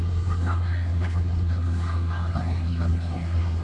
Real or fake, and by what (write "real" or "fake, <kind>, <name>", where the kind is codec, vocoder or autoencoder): fake, codec, SNAC